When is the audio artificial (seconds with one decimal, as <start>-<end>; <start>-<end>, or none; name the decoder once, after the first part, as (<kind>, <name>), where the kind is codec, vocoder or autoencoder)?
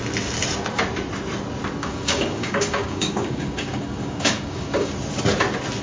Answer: 1.8-4.9 (codec, DAC)